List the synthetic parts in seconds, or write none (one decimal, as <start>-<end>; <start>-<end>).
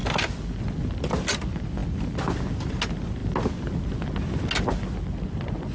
none